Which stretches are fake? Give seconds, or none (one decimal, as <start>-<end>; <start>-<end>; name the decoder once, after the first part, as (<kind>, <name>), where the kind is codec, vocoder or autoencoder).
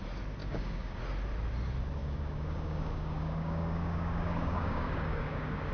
0.4-1.0 (codec, DAC); 2.0-5.7